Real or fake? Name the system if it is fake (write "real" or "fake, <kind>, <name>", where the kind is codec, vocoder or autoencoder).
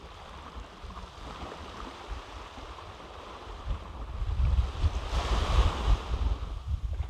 real